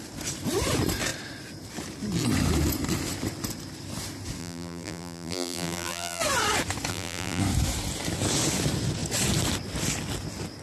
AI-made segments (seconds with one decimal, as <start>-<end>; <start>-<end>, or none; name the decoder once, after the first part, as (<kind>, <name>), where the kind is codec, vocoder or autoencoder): 4.4-6.2 (vocoder, BigVGAN v2); 6.9-7.4